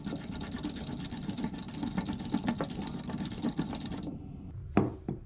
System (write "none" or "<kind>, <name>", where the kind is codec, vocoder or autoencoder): none